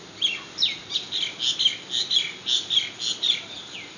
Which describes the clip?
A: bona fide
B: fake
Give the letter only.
A